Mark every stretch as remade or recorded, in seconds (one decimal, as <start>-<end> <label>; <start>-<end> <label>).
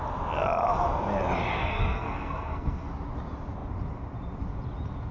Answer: 0.0-1.6 recorded; 1.6-2.9 remade; 2.9-5.1 recorded